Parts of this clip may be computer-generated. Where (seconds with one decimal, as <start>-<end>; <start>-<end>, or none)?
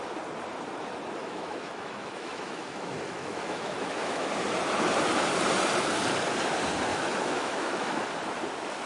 1.2-4.3; 6.9-8.0